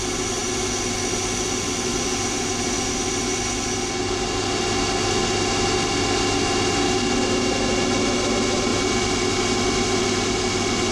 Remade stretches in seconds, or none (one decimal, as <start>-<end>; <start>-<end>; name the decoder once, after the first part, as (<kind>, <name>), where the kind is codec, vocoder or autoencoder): none